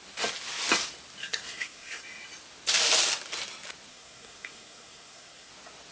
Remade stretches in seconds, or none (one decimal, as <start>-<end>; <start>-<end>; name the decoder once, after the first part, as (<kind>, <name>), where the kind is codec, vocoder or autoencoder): 1.2-2.0 (codec, SNAC); 3.9-5.5